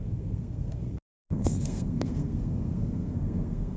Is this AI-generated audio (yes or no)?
yes